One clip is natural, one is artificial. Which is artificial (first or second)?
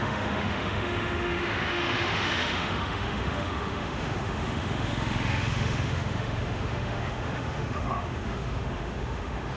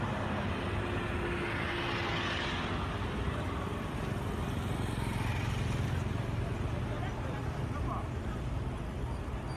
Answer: first